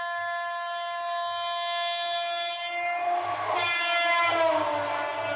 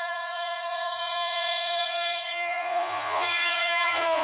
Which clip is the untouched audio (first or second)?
first